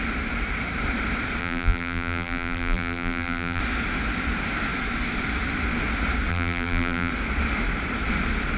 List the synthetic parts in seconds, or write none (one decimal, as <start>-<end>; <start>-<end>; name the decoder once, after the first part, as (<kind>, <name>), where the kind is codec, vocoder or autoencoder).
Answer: 1.4-3.6 (vocoder, BigVGAN v2); 6.3-7.1